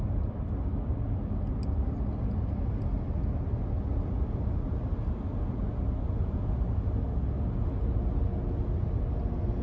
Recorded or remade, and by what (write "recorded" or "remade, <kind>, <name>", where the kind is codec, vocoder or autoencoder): recorded